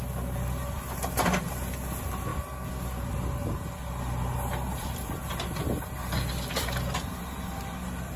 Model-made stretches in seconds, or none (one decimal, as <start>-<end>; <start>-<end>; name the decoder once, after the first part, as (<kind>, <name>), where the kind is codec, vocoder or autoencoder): none